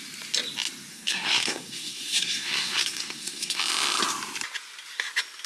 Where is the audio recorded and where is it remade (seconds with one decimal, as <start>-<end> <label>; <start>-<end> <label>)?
0.0-0.9 recorded; 0.9-3.6 remade; 3.6-5.5 recorded